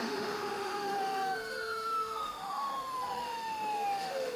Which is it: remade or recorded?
remade